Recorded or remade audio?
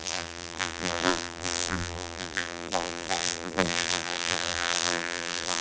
remade